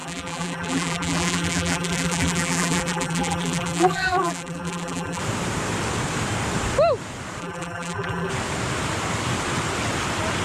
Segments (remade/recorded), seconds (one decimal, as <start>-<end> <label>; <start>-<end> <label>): 0.0-5.2 remade; 5.2-7.4 recorded; 7.4-8.3 remade; 8.3-10.4 recorded